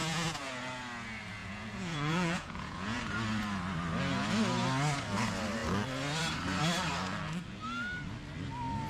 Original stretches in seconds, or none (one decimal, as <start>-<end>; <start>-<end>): 0.5-1.4; 3.0-8.9